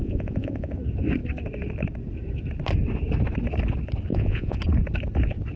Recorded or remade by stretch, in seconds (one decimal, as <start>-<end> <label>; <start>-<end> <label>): 0.0-0.7 remade; 0.7-4.1 recorded; 4.1-4.6 remade; 4.6-5.6 recorded